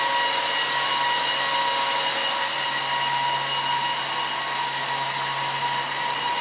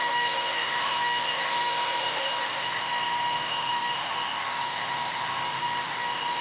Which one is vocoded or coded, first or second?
second